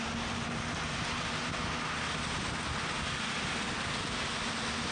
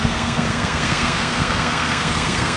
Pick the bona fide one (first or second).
first